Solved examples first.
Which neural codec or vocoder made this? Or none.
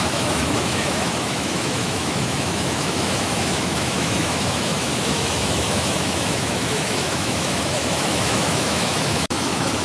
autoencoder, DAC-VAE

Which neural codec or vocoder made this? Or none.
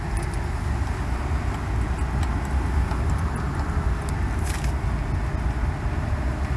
none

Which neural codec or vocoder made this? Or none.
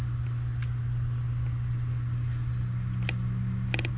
none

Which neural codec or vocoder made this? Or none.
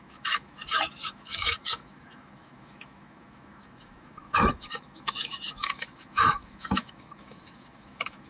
autoencoder, DAC-VAE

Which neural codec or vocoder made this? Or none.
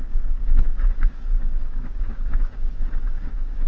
codec, DAC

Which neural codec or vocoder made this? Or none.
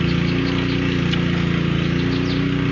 none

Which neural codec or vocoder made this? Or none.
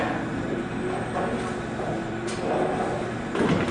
none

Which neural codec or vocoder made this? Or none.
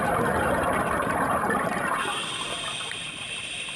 vocoder, BigVGAN v2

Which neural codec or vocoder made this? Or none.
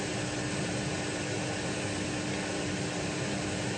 none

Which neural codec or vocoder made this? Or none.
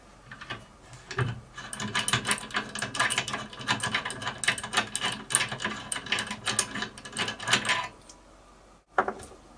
none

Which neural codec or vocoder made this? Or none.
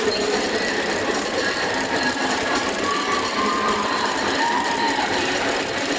vocoder, BigVGAN v2